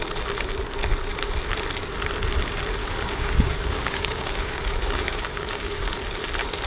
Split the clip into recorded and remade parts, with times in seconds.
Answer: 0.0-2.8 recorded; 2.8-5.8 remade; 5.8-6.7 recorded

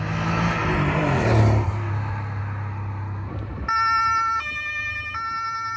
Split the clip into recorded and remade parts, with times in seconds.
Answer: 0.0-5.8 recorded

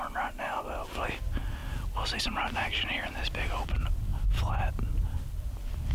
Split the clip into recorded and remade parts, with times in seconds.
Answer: 0.0-5.9 recorded

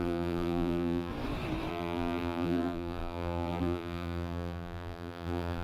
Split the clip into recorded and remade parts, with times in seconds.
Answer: 0.0-1.1 remade; 1.1-1.7 recorded; 1.7-5.6 remade

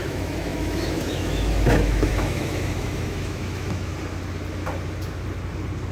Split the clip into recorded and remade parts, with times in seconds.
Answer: 0.0-3.9 remade; 3.9-5.9 recorded

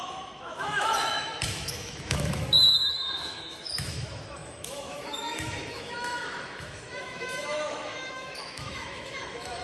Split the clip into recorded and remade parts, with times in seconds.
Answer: 0.0-9.6 remade

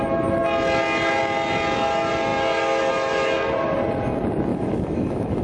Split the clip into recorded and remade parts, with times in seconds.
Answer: 0.0-4.5 recorded; 4.5-5.4 remade